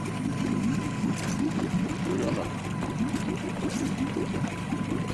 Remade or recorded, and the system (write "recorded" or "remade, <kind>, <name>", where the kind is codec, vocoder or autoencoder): recorded